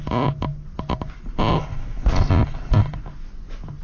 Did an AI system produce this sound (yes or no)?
no